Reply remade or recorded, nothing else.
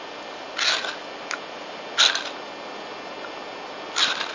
recorded